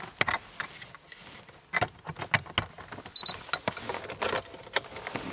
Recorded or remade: recorded